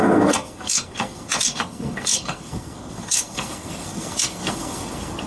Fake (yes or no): yes